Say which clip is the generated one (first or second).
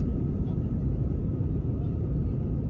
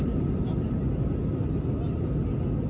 first